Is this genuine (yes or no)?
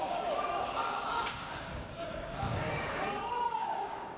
no